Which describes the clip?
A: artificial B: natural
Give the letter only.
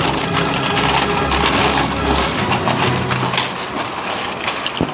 B